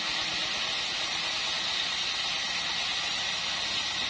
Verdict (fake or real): real